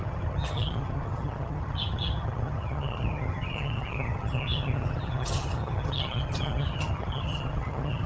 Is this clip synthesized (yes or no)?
yes